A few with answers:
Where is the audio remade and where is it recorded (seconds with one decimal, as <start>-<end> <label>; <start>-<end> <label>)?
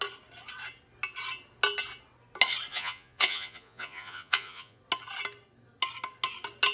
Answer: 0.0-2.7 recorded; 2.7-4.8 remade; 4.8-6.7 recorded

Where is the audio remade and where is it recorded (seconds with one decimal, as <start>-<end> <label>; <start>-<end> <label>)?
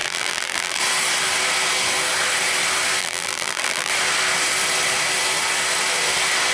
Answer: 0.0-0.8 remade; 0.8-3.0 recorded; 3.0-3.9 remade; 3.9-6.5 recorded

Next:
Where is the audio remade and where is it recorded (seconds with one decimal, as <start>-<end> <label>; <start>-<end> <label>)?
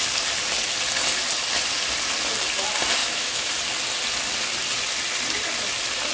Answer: 0.0-3.0 recorded; 3.0-3.5 remade; 3.5-6.1 recorded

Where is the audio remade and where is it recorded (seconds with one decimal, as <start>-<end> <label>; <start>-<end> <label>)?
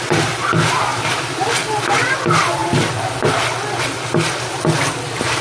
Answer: 0.0-5.4 recorded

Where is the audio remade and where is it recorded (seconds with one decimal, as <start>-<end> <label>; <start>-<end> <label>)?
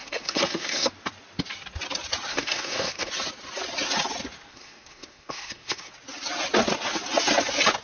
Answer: 0.0-0.9 remade; 0.9-2.3 recorded; 2.3-3.1 remade; 3.1-4.5 recorded; 4.5-5.9 remade; 5.9-7.8 recorded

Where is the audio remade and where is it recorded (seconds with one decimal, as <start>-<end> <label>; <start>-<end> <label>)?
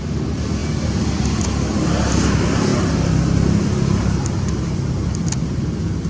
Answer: 0.0-6.1 recorded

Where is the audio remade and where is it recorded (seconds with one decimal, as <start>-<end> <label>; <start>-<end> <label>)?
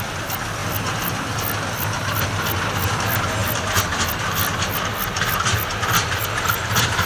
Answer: 0.0-7.1 recorded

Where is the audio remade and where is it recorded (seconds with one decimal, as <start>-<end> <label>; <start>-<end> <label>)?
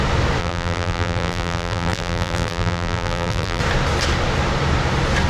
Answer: 0.0-0.4 recorded; 0.4-3.6 remade; 3.6-5.3 recorded